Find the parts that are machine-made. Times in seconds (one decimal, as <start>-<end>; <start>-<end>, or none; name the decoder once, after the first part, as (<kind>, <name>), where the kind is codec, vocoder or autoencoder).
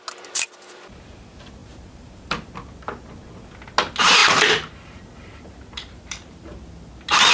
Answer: 1.6-2.5 (vocoder, BigVGAN v2); 4.2-6.6